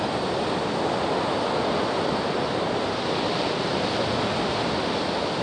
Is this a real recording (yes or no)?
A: yes